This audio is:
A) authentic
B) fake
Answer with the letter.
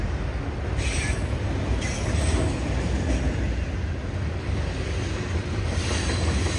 A